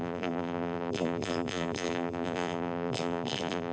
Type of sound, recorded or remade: remade